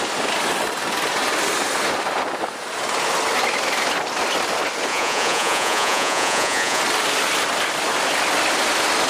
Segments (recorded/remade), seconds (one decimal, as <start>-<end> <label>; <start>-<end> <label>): 0.0-4.9 recorded; 4.9-6.8 remade; 6.8-9.1 recorded